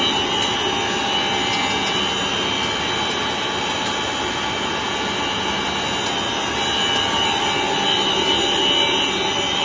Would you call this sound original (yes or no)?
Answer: yes